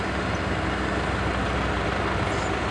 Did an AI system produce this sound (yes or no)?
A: no